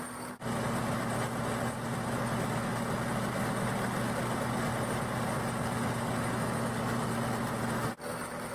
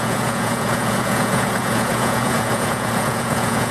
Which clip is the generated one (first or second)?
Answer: second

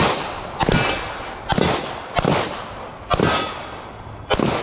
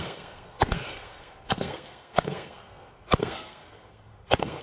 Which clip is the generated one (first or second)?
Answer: second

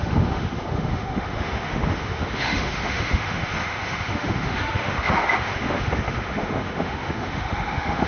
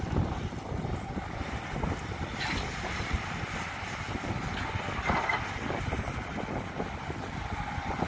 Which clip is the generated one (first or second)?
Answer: first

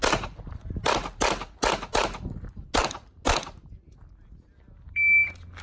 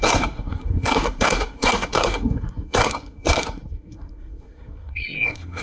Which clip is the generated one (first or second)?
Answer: second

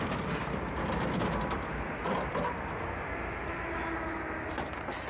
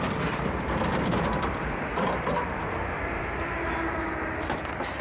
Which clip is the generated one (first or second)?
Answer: second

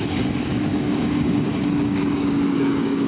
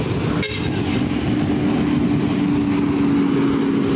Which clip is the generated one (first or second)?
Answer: first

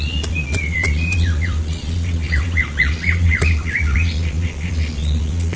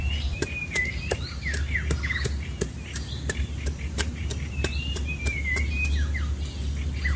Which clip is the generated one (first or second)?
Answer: first